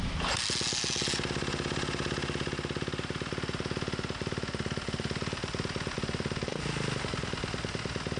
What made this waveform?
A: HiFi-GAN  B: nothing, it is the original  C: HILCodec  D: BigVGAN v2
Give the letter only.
B